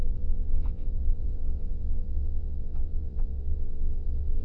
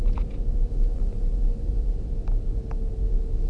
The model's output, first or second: first